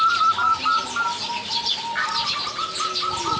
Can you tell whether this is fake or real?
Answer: real